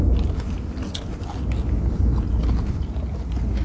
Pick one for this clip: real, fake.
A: real